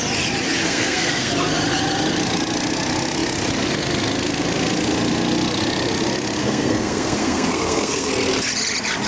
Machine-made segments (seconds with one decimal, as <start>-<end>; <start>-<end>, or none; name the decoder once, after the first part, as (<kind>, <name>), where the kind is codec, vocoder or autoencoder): 0.6-1.3 (codec, SNAC); 6.4-8.1